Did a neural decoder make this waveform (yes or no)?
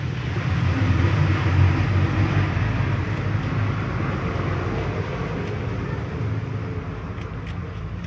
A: no